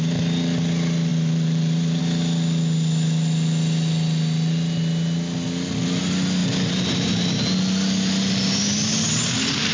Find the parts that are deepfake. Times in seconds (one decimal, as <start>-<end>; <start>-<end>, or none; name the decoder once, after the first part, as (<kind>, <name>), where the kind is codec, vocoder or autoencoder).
1.1-2.0 (vocoder, BigVGAN v2); 6.4-7.4